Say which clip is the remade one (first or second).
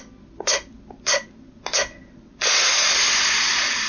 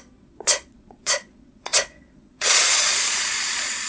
second